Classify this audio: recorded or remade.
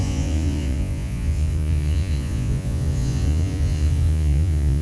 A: remade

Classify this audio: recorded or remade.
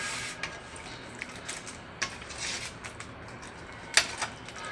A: recorded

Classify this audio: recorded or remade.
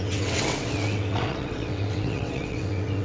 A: remade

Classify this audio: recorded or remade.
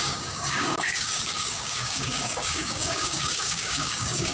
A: remade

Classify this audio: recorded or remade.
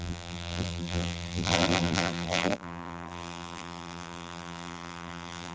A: remade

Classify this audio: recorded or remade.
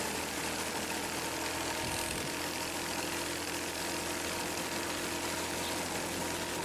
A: recorded